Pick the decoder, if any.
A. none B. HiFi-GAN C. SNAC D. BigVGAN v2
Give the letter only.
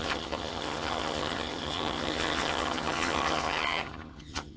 B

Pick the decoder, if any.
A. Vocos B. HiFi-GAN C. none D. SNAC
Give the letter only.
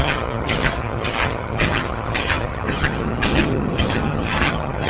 B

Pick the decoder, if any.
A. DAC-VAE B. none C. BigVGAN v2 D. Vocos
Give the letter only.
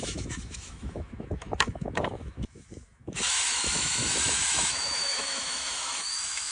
A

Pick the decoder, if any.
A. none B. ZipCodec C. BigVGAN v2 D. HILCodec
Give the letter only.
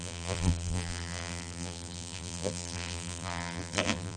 C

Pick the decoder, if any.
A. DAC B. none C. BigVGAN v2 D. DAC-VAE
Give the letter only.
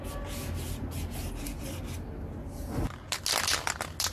B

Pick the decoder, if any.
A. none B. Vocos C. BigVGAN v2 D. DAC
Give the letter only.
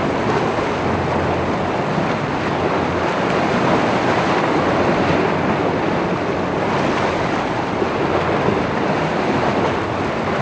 A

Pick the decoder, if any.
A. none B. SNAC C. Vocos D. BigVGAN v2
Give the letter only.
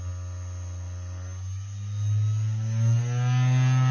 A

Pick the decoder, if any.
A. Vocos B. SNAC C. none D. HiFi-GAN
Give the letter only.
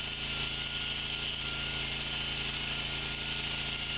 C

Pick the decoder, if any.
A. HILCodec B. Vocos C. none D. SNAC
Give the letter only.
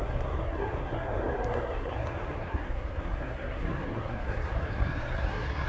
D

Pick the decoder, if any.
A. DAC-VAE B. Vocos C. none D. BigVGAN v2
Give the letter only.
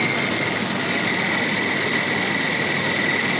C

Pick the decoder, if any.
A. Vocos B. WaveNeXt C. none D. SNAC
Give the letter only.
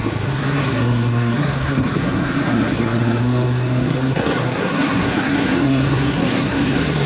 D